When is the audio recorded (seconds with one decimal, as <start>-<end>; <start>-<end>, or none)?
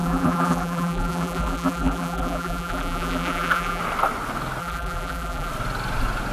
3.8-4.6; 5.5-6.3